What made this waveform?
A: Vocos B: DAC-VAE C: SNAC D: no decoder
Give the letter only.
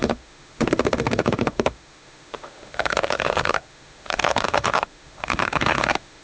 B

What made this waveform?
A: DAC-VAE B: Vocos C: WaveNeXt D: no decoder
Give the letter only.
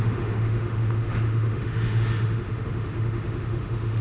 A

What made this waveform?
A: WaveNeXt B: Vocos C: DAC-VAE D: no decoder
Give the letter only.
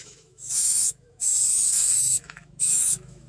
C